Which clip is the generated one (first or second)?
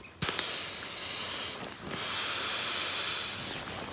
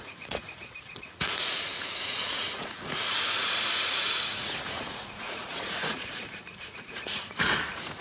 second